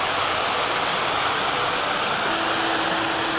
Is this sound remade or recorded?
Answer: recorded